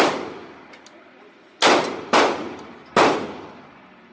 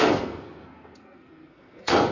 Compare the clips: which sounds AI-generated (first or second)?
second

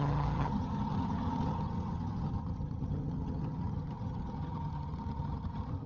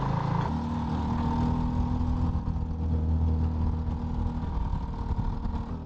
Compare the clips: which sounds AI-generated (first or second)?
first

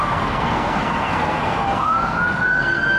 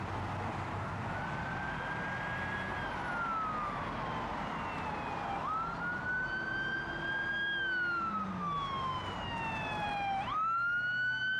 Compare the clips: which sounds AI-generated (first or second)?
first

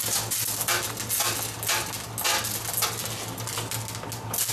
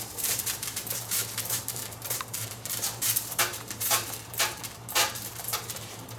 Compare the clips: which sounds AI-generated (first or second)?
second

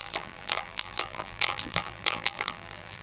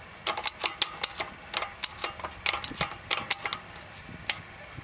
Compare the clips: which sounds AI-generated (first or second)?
first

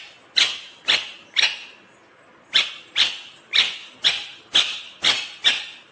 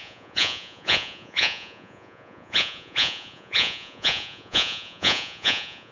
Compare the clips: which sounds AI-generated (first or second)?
second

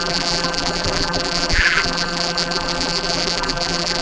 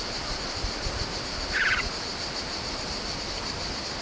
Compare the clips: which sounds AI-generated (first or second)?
first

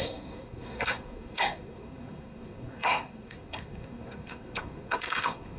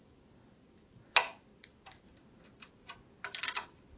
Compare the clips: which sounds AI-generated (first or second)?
first